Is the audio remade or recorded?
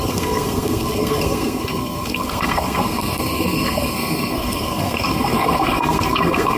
remade